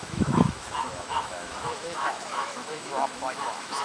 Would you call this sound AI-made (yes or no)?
yes